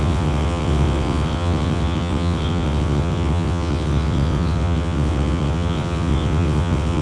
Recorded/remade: remade